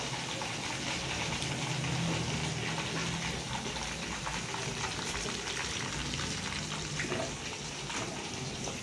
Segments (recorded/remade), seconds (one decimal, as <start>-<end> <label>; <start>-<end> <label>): 0.0-8.8 recorded